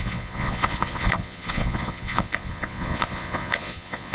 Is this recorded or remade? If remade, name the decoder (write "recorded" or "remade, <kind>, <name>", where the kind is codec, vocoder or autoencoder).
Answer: remade, vocoder, Vocos